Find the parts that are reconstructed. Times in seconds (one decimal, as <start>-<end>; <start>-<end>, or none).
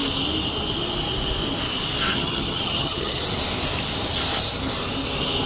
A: 2.1-3.2